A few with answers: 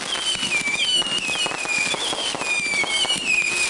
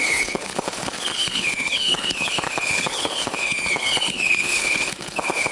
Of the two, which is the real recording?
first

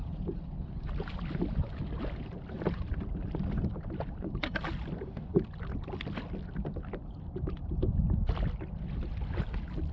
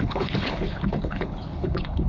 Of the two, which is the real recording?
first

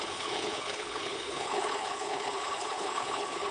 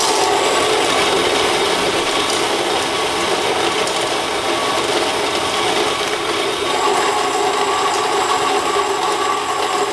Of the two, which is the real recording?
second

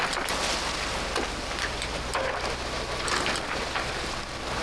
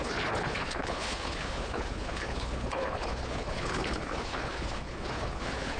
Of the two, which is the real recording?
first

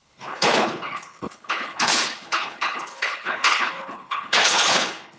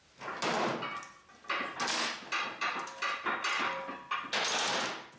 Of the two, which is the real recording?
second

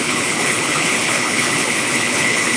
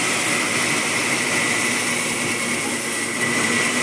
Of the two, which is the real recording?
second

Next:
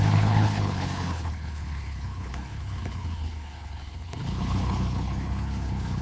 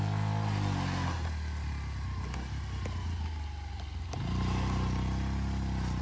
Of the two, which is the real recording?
second